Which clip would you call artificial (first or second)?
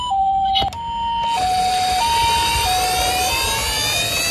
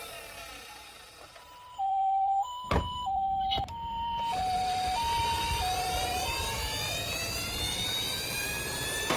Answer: second